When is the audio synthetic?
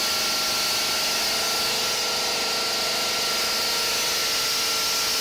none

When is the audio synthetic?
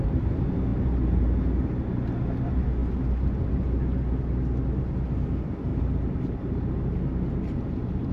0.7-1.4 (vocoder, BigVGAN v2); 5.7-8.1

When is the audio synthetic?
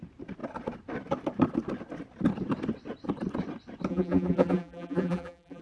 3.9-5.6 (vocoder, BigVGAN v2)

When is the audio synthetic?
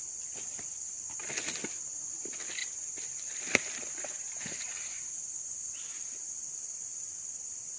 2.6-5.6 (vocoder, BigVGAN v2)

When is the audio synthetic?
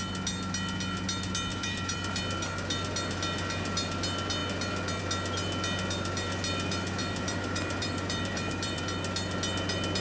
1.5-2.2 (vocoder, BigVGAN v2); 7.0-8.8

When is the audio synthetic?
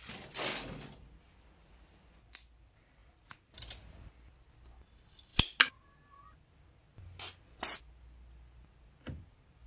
none